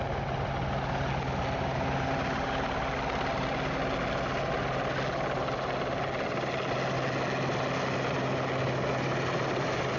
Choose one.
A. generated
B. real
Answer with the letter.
B